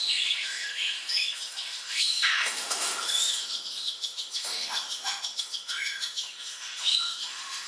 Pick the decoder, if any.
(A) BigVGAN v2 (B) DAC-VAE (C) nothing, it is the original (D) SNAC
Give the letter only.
B